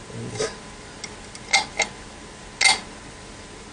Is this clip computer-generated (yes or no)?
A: no